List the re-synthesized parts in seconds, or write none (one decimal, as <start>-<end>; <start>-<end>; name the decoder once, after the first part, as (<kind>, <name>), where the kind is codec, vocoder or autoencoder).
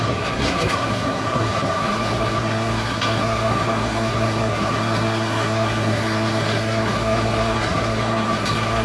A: 0.0-8.8 (codec, SNAC)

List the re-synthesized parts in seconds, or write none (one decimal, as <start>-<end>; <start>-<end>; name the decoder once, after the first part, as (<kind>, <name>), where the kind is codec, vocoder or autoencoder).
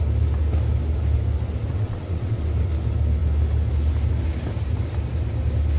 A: 1.7-2.5 (vocoder, WaveNeXt)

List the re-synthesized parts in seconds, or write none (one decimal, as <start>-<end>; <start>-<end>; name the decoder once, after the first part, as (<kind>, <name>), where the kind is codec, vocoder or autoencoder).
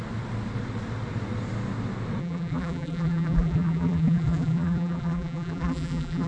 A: 2.2-6.3 (vocoder, BigVGAN v2)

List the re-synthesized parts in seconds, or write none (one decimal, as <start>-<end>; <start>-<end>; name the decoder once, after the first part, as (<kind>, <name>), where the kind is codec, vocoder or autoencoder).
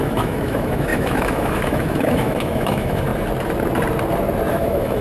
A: 0.0-3.1 (autoencoder, DAC-VAE); 4.5-5.0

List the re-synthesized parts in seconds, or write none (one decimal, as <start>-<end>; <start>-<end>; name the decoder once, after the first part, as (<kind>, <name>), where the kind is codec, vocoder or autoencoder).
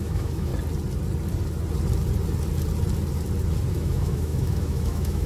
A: 0.0-0.5 (autoencoder, DAC-VAE); 3.7-5.3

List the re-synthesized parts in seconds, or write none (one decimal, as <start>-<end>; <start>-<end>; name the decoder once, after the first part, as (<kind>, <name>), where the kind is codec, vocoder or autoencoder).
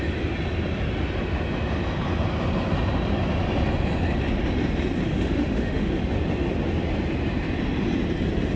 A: 5.1-5.9 (autoencoder, DAC-VAE)